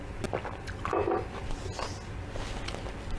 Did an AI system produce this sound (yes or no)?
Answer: no